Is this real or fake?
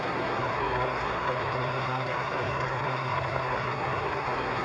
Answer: fake